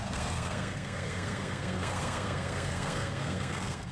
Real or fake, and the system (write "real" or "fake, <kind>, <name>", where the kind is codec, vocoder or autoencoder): fake, codec, SNAC